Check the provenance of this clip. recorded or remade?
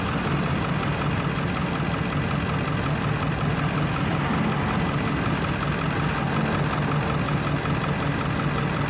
recorded